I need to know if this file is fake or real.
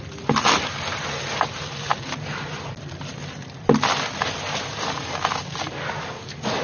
real